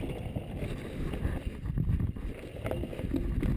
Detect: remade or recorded recorded